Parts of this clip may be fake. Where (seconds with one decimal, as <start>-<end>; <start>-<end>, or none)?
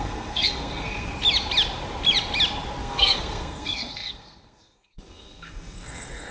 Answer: 0.0-1.1; 2.8-6.3